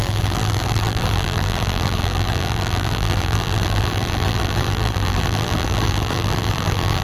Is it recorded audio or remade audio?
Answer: remade